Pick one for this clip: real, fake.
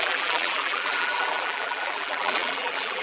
fake